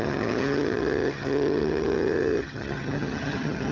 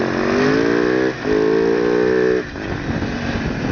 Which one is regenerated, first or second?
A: first